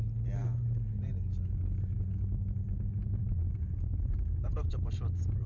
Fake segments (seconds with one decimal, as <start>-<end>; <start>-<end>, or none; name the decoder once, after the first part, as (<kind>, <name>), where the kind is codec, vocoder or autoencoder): 3.2-4.9 (vocoder, BigVGAN v2)